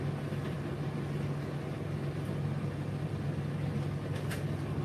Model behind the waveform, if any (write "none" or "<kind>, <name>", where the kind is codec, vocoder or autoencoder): none